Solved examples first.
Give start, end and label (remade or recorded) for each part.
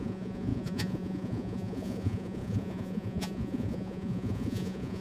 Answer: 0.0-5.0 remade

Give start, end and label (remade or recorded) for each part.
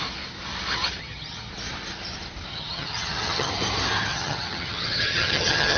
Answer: 0.0-1.0 recorded; 1.0-1.5 remade; 1.5-2.5 recorded; 2.5-3.5 remade; 3.5-4.1 recorded; 4.1-5.8 remade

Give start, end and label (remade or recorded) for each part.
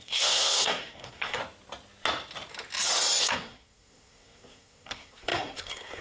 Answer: 0.0-1.4 remade; 1.4-3.2 recorded; 3.2-6.0 remade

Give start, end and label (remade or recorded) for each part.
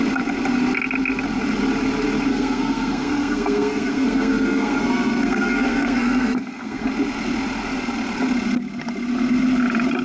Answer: 0.0-2.3 recorded; 2.3-6.9 remade; 6.9-10.0 recorded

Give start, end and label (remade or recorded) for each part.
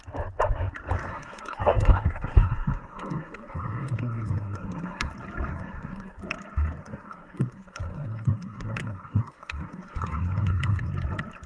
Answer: 0.0-1.1 recorded; 1.1-5.1 remade; 5.1-5.5 recorded; 5.5-6.2 remade; 6.2-6.8 recorded; 6.8-10.9 remade; 10.9-11.5 recorded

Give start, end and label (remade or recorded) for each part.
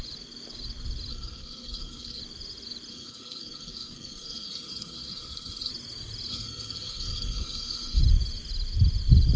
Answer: 0.0-1.1 recorded; 1.1-2.2 remade; 2.2-2.9 recorded; 2.9-5.7 remade; 5.7-6.3 recorded; 6.3-8.0 remade; 8.0-9.4 recorded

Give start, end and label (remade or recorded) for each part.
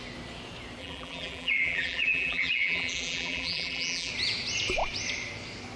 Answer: 0.0-0.8 recorded; 0.8-4.1 remade; 4.1-5.8 recorded